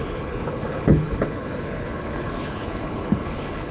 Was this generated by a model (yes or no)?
yes